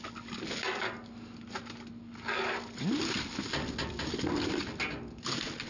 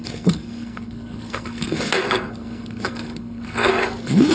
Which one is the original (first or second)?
first